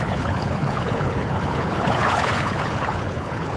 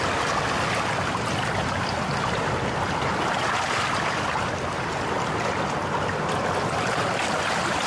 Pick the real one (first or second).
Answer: second